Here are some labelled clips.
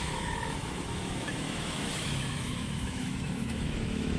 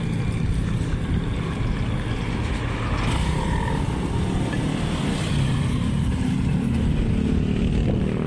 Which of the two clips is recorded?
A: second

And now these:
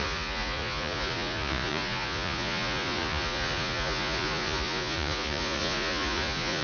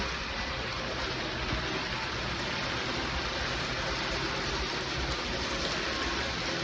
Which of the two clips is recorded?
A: second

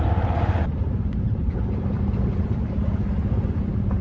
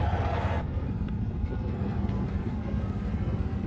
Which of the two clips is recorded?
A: first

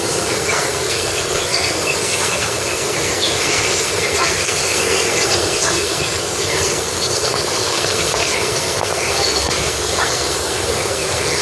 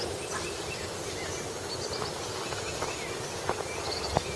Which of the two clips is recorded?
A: second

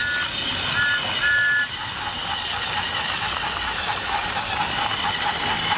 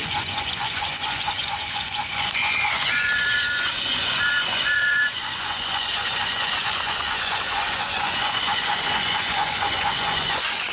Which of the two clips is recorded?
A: first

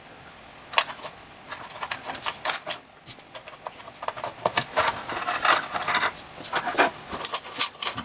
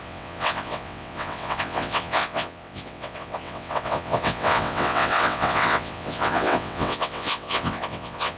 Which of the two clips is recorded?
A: first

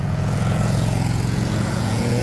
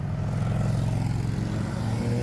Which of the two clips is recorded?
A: second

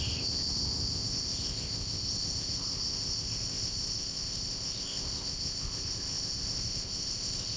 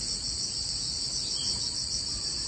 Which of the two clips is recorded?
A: second